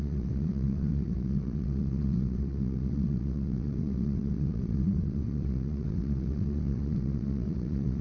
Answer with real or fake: fake